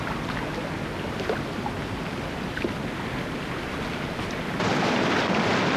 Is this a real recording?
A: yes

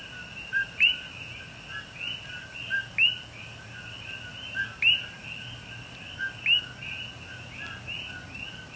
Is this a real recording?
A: yes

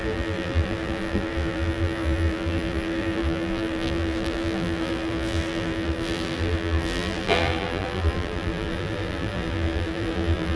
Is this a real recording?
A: no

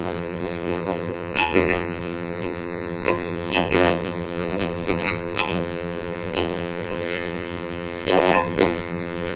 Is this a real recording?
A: no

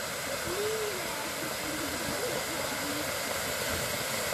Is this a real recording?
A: yes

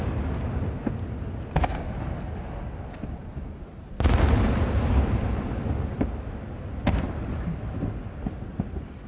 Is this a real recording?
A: yes